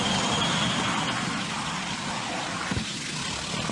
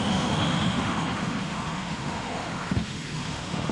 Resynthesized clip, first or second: second